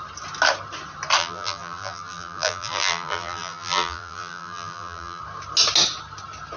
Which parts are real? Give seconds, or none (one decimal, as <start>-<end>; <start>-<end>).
0.0-1.2; 5.2-6.6